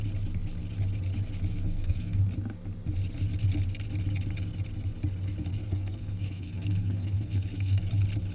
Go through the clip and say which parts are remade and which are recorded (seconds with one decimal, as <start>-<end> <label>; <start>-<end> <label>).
0.0-1.5 recorded; 1.5-2.2 remade; 2.2-5.5 recorded; 5.5-7.9 remade; 7.9-8.3 recorded